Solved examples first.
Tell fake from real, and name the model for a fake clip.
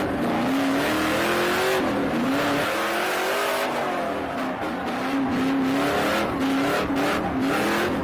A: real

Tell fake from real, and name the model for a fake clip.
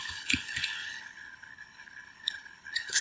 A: fake, codec, HILCodec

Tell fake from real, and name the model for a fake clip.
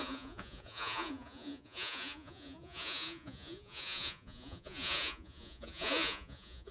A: fake, vocoder, Vocos